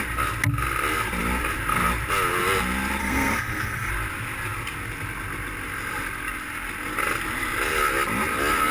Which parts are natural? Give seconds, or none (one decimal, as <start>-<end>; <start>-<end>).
0.0-3.0; 3.9-8.7